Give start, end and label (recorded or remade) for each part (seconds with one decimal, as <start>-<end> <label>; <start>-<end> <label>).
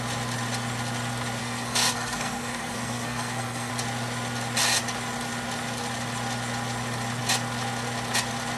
0.0-1.4 recorded; 1.4-3.7 remade; 3.7-8.6 recorded